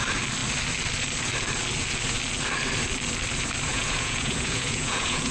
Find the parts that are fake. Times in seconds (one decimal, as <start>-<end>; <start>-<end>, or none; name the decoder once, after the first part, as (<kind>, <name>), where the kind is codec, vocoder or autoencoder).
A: 3.7-5.3 (vocoder, Vocos)